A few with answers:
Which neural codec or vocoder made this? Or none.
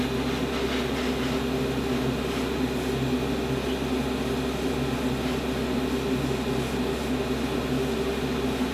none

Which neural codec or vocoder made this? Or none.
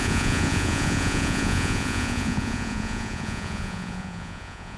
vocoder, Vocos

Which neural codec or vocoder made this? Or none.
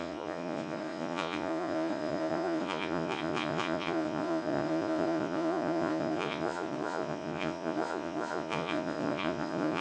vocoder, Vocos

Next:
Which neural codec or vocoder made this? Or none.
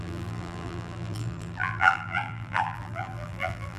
vocoder, BigVGAN v2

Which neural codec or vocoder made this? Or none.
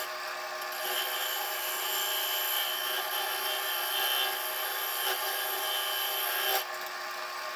none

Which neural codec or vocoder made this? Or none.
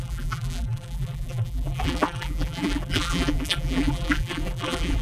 vocoder, BigVGAN v2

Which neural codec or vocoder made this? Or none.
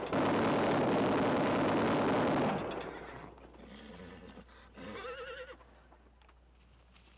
none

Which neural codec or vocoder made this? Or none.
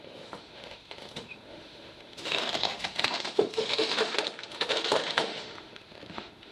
autoencoder, DAC-VAE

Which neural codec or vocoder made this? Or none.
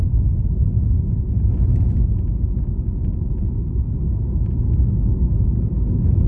none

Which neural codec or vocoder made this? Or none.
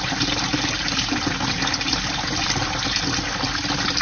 none